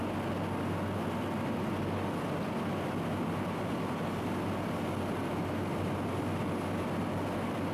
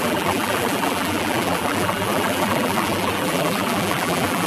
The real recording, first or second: first